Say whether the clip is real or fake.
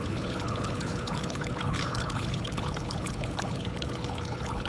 fake